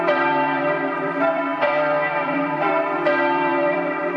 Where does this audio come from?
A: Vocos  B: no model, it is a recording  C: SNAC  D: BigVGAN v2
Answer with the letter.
D